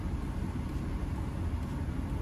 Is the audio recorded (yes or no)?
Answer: yes